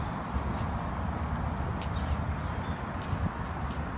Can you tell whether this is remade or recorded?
recorded